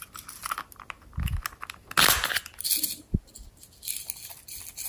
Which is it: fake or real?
real